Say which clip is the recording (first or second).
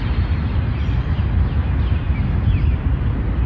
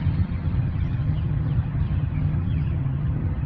first